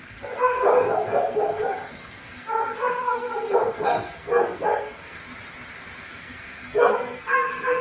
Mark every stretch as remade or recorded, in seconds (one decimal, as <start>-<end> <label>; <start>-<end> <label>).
0.0-5.2 remade; 5.2-6.0 recorded; 6.0-7.8 remade